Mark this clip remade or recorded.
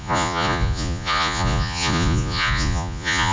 remade